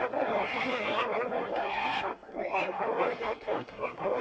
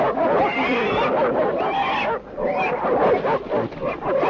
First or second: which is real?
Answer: second